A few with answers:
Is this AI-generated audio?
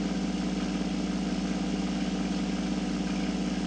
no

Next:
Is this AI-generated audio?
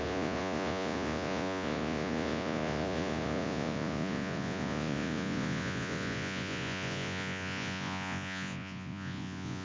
yes